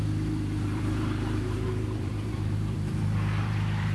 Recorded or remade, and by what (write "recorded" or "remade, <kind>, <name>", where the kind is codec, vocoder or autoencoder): remade, vocoder, BigVGAN v2